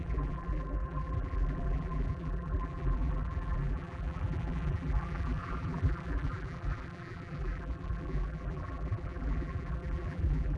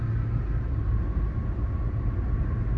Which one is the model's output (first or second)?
first